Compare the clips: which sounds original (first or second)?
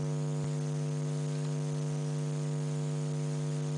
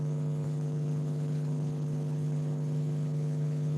first